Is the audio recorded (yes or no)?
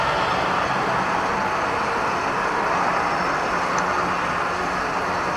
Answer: yes